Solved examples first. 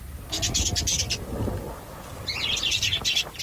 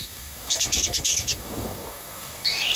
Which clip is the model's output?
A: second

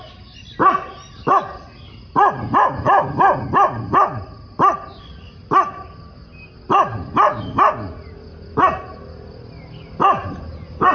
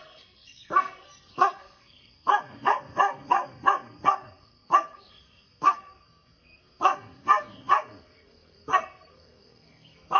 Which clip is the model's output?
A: second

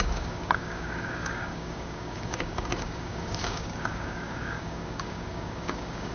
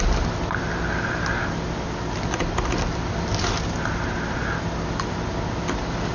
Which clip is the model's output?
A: first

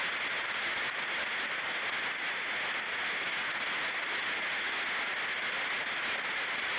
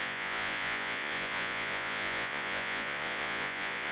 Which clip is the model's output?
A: second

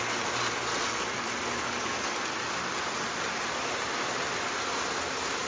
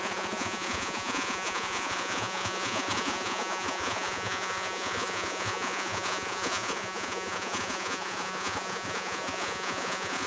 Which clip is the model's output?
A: second